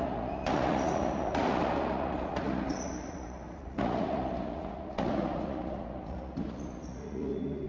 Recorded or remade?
remade